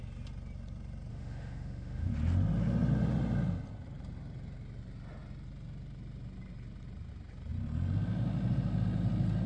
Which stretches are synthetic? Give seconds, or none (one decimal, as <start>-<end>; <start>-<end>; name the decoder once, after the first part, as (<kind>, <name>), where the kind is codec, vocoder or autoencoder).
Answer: 1.1-2.1 (autoencoder, DAC-VAE)